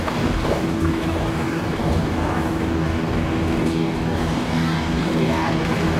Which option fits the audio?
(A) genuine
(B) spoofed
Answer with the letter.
B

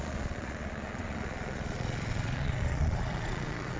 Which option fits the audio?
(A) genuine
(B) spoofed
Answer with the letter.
B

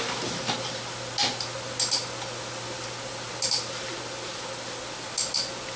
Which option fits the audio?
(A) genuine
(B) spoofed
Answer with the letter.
A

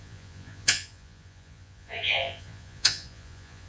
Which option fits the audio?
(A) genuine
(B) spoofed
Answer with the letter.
B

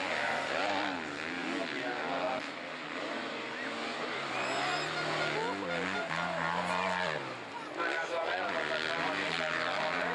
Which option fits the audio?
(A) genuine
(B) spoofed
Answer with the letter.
A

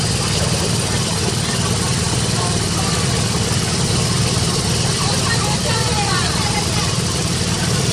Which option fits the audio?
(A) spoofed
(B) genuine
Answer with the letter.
B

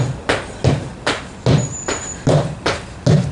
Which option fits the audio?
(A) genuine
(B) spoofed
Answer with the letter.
A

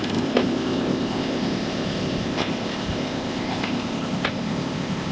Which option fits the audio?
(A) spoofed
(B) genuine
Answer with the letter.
A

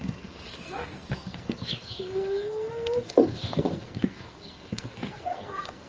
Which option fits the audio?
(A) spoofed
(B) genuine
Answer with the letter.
A